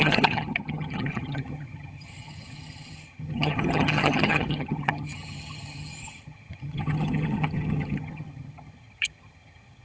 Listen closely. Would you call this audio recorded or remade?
remade